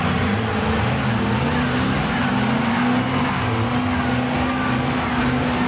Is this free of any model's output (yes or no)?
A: yes